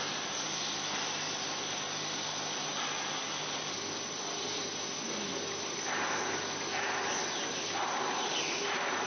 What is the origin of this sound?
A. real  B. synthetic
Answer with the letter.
A